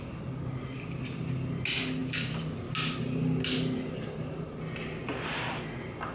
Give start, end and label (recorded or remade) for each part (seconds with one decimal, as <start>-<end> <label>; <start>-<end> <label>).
0.0-6.1 recorded